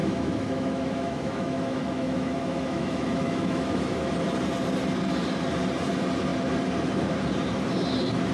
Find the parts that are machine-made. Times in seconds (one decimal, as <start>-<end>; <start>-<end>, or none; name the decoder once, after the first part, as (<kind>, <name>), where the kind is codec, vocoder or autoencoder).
0.0-4.1 (autoencoder, DAC-VAE)